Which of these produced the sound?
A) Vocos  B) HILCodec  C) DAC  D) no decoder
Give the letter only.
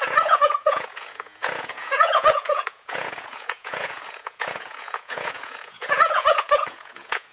A